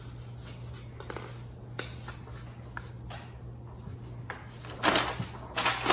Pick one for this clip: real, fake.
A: real